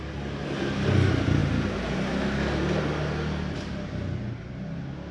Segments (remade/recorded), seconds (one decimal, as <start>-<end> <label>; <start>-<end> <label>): 0.0-5.1 recorded